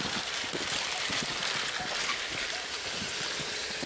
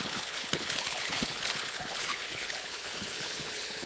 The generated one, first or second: second